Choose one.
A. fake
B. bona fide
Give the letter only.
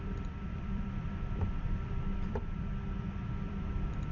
A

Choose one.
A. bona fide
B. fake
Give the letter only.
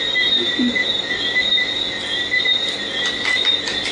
A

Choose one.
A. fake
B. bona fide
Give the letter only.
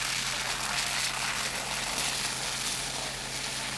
B